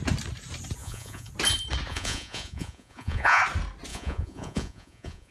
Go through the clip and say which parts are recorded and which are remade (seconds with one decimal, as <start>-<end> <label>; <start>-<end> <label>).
0.0-0.8 recorded; 0.8-1.3 remade; 1.3-1.9 recorded; 1.9-3.4 remade; 3.4-3.9 recorded; 3.9-5.3 remade